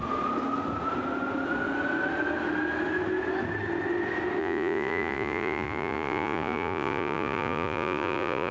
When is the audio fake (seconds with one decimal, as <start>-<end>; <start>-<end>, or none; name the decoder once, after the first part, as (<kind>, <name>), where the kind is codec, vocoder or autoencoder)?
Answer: 4.4-8.5 (vocoder, Vocos)